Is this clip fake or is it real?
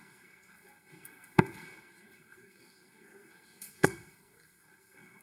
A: fake